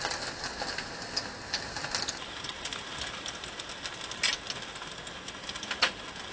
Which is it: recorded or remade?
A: recorded